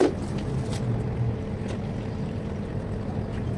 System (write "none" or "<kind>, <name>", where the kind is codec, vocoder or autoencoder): none